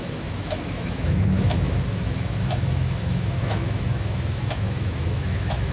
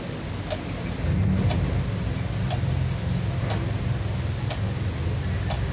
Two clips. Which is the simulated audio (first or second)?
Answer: first